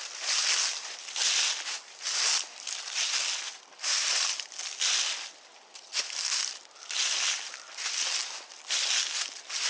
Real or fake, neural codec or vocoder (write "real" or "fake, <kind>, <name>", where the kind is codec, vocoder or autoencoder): real